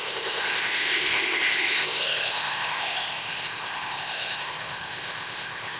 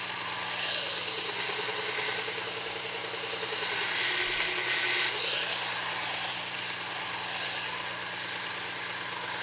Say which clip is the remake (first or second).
first